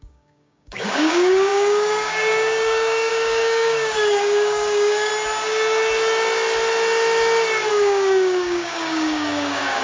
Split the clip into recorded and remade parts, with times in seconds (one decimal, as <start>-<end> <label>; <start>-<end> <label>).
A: 0.0-5.1 remade; 5.1-7.7 recorded; 7.7-9.8 remade